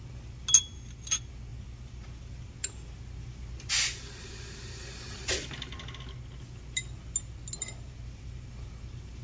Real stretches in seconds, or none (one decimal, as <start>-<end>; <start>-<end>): 0.0-9.2